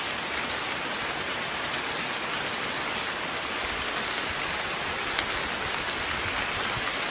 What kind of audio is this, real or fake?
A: real